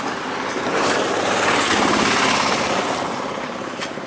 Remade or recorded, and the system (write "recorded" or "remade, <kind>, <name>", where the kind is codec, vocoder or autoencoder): remade, vocoder, BigVGAN v2